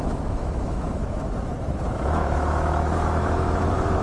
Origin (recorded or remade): remade